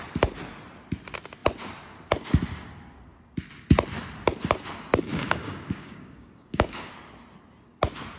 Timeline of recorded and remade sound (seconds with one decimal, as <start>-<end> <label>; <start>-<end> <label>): 0.0-5.1 recorded; 5.1-6.9 remade; 6.9-8.2 recorded